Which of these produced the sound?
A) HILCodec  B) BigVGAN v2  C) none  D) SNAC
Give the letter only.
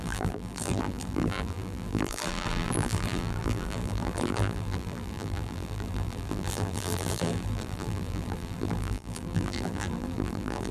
B